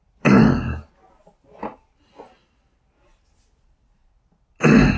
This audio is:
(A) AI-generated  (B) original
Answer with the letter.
B